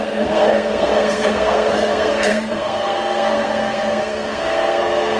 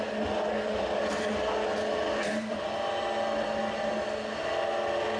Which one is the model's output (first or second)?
first